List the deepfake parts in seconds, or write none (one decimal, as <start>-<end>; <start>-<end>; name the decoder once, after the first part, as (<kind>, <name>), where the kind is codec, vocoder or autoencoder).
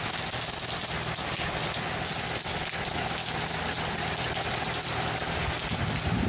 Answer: none